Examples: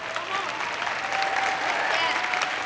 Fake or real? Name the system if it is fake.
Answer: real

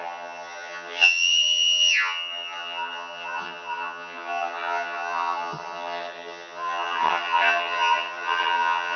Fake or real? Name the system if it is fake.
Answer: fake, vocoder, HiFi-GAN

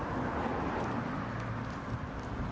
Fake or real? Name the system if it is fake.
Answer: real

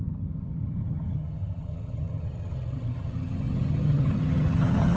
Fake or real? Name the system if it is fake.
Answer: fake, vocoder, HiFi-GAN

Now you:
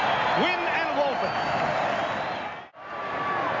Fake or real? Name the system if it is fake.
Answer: real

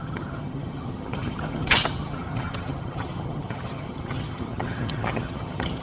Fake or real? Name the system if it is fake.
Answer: fake, vocoder, HiFi-GAN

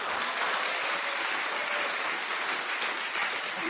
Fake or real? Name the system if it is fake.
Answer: real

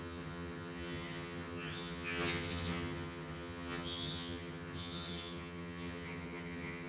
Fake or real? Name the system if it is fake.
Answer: fake, vocoder, HiFi-GAN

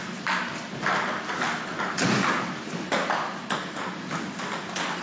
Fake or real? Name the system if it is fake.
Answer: real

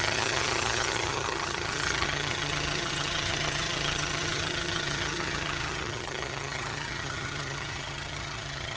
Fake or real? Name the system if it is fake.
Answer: fake, vocoder, HiFi-GAN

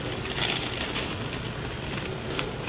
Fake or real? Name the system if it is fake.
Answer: real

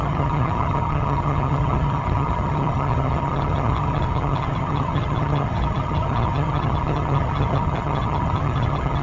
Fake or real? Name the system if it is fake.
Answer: fake, vocoder, HiFi-GAN